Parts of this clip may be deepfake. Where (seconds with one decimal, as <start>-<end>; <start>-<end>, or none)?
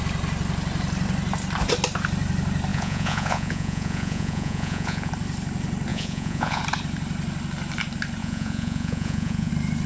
2.7-5.1; 5.9-6.6; 8.2-9.5